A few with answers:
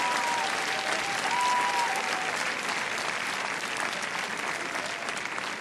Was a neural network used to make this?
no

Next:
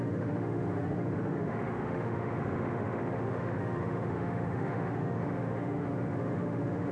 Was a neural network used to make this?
yes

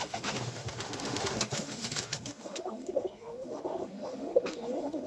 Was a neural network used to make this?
yes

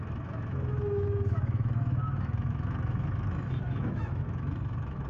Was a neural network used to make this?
yes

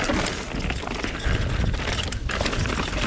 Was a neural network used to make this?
no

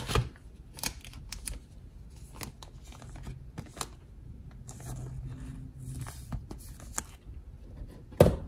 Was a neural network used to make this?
no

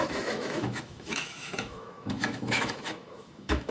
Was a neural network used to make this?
yes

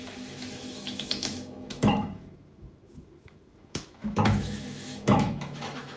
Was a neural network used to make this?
yes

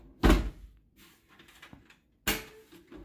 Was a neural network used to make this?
no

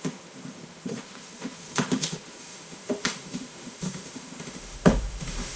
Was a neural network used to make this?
yes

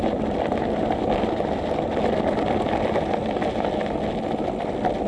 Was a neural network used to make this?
no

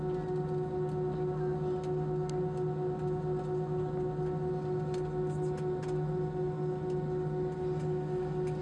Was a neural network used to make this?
no